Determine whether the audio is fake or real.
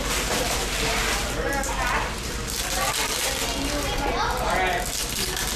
real